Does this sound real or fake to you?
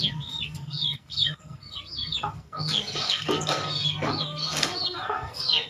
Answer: fake